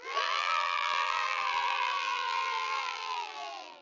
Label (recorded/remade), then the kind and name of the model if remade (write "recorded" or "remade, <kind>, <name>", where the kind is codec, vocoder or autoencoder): remade, vocoder, BigVGAN v2